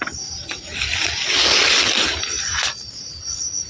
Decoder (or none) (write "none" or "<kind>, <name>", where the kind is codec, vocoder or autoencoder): vocoder, BigVGAN v2